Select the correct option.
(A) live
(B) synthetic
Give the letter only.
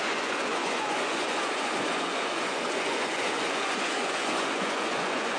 B